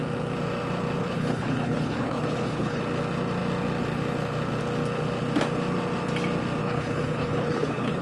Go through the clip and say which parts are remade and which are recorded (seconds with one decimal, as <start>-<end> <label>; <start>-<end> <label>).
0.0-1.0 recorded; 1.0-2.8 remade; 2.8-6.6 recorded; 6.6-8.0 remade